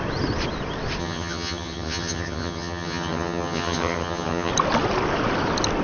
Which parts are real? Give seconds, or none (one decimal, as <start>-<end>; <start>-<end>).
0.0-1.0; 4.5-5.8